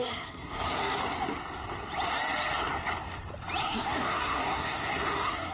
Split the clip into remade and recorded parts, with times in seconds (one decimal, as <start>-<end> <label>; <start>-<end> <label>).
0.0-1.0 remade; 1.0-3.6 recorded; 3.6-5.5 remade